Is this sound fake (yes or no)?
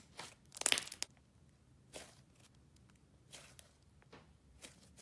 no